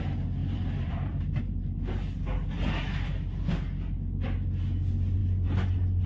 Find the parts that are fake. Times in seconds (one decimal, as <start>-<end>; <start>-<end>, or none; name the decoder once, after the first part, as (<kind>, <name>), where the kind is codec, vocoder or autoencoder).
0.4-1.4 (vocoder, BigVGAN v2); 5.2-6.1